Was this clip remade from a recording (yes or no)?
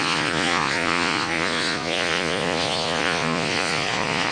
yes